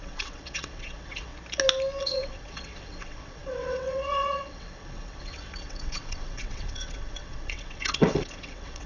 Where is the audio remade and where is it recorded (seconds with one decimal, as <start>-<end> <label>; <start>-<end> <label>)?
0.0-1.3 remade; 1.3-2.0 recorded; 2.0-8.9 remade